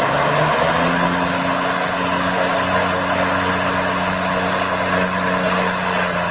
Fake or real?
real